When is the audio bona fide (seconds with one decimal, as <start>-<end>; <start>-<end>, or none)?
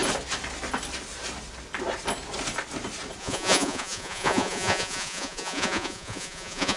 0.0-3.2